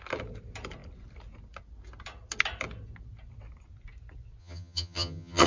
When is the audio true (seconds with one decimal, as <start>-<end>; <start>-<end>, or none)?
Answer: 0.0-4.4